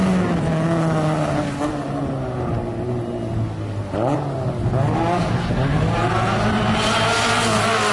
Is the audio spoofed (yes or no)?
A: no